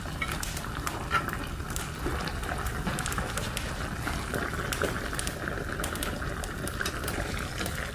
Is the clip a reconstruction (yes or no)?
no